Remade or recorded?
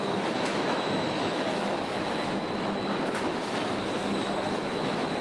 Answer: remade